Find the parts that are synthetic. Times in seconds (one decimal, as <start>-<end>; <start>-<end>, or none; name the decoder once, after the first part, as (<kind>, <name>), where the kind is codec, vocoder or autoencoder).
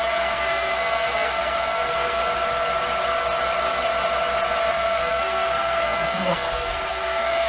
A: 0.0-2.2 (codec, SNAC); 4.7-7.5